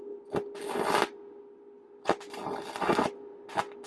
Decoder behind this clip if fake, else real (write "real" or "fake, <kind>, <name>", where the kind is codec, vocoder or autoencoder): real